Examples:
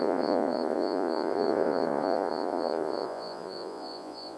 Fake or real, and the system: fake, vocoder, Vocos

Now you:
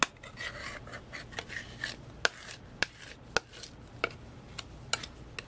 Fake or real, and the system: real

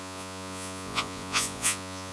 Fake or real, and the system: fake, vocoder, Vocos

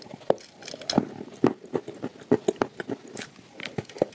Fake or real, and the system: real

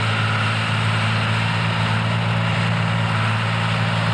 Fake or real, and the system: real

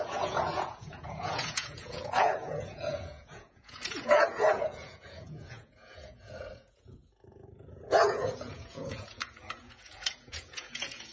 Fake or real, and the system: fake, vocoder, Vocos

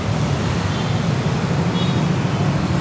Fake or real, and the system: real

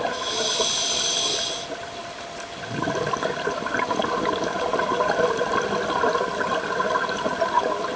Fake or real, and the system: real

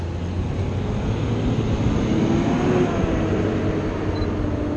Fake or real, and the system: real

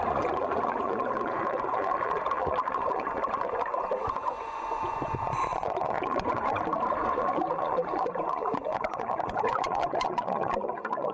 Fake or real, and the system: fake, vocoder, Vocos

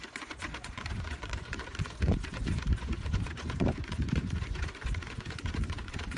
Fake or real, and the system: fake, vocoder, Vocos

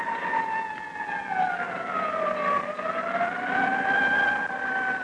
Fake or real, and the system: real